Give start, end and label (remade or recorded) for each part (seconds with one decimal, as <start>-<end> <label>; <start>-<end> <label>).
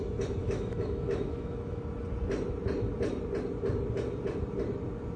0.0-0.4 recorded; 0.4-1.8 remade; 1.8-5.2 recorded